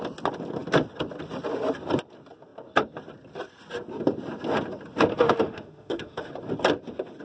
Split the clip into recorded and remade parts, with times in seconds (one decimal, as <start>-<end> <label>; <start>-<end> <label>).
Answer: 0.0-5.1 recorded; 5.1-6.3 remade; 6.3-7.2 recorded